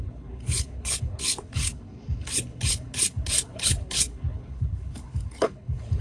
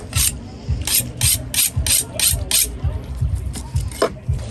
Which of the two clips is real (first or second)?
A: second